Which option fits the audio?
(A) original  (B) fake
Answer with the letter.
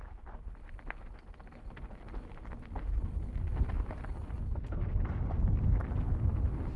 A